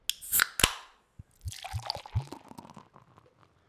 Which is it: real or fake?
real